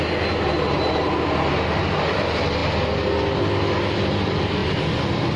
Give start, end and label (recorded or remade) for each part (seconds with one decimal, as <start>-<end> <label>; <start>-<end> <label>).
0.0-0.5 recorded; 0.5-1.1 remade; 1.1-5.4 recorded